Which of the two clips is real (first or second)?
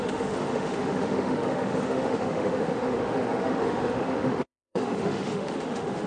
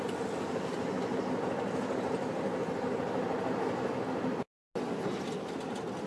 second